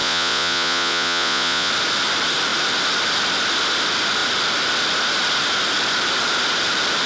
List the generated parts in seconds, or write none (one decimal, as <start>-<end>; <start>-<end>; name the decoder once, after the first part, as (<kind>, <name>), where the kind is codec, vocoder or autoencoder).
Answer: 0.0-1.7 (vocoder, Vocos)